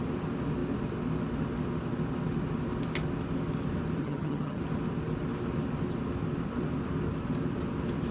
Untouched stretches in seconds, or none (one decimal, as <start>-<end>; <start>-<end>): 0.0-4.0; 4.6-8.1